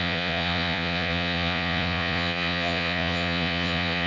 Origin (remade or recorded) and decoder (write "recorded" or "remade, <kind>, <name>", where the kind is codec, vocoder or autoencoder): remade, vocoder, Vocos